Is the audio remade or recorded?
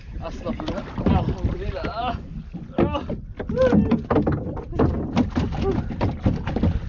recorded